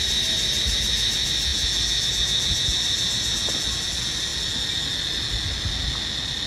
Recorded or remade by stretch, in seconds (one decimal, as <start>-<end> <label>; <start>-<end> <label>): 0.0-6.5 recorded